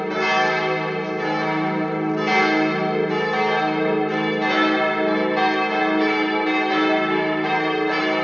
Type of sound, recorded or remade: recorded